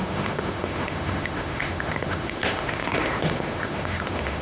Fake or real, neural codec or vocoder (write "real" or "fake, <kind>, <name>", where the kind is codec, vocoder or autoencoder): fake, autoencoder, DAC-VAE